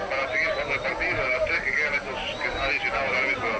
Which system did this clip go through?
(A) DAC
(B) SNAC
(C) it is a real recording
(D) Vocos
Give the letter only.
C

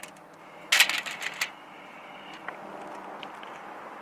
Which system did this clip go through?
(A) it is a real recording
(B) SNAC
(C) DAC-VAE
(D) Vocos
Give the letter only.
A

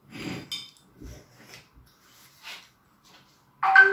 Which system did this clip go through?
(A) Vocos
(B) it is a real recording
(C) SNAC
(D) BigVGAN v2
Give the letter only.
B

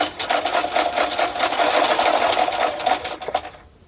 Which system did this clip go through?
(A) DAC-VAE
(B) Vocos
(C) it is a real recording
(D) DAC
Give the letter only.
C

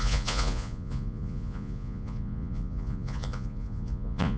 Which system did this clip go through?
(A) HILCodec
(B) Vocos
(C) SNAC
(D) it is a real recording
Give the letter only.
B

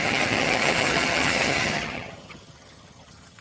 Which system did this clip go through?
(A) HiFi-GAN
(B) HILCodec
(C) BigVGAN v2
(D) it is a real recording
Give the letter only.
A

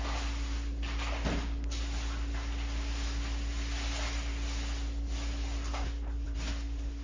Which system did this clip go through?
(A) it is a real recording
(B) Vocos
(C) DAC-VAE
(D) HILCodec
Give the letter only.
A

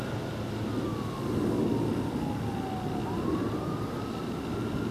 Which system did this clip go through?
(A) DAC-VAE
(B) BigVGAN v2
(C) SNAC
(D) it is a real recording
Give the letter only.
D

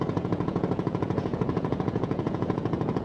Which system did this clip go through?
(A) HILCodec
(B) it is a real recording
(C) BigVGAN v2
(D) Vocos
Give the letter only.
D